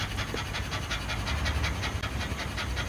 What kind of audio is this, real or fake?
real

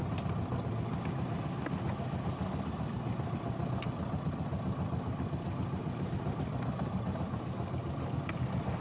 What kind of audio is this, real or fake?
real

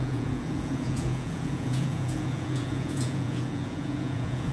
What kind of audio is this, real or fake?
fake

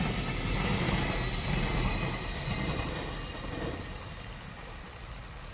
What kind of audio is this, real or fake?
real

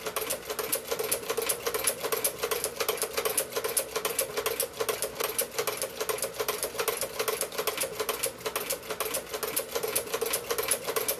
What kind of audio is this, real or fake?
real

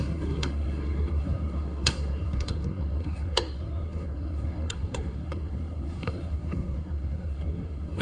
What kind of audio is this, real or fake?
fake